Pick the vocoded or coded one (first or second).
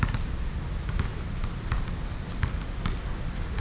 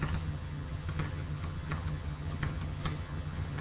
second